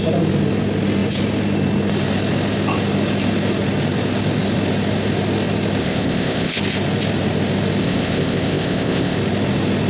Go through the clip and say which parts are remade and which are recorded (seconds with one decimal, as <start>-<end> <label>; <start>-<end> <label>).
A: 0.0-5.8 recorded; 5.8-6.6 remade; 6.6-7.8 recorded; 7.8-9.2 remade; 9.2-9.9 recorded